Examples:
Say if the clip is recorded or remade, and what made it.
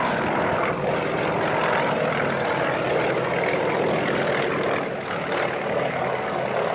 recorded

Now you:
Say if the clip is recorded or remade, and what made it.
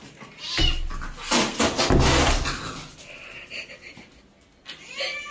recorded